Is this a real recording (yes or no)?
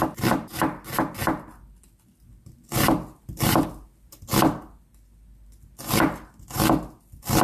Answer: yes